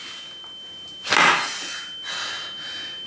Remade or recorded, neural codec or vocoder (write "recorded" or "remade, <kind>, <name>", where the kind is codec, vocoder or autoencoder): recorded